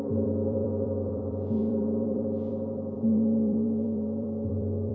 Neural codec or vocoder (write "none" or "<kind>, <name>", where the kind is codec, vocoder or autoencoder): vocoder, BigVGAN v2